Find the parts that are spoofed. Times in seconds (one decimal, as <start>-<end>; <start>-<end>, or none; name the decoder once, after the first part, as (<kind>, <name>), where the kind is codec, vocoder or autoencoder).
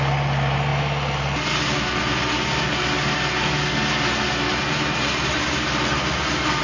4.5-6.6 (vocoder, BigVGAN v2)